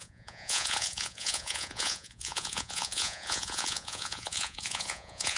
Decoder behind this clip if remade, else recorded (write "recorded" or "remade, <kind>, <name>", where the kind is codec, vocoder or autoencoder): remade, vocoder, Vocos